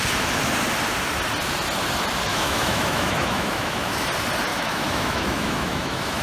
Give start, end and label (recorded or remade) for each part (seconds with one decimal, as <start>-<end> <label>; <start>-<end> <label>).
0.0-2.3 recorded; 2.3-4.1 remade; 4.1-4.5 recorded; 4.5-6.2 remade